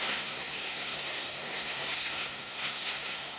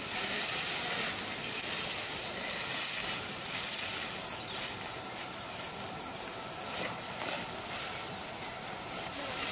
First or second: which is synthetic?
first